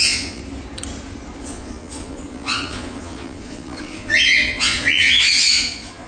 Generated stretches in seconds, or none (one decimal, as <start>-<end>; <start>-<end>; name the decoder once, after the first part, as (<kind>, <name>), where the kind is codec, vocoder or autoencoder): 0.0-0.4 (vocoder, Vocos); 1.4-6.1